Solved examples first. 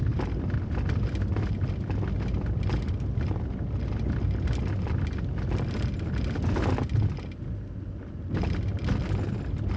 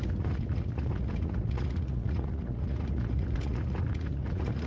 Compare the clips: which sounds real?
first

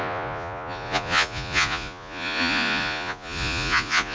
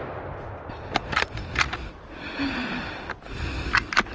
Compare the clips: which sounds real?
second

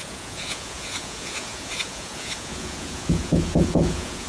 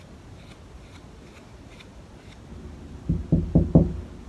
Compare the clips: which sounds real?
second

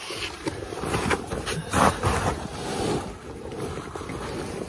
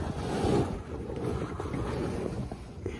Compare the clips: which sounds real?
first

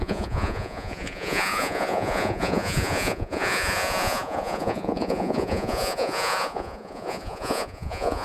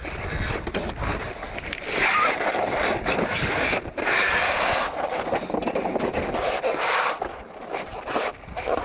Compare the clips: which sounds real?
second